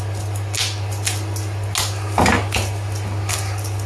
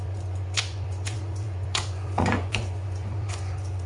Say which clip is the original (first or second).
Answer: first